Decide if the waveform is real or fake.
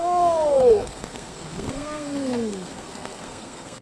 fake